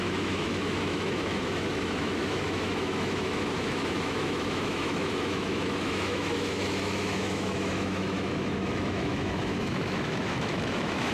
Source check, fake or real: fake